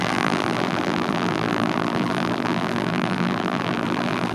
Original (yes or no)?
no